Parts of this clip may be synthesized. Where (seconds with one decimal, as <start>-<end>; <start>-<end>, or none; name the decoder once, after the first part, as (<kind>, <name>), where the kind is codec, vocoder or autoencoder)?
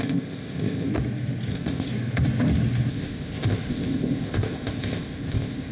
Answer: 0.0-0.9 (codec, ZipCodec); 1.5-1.9; 2.9-5.7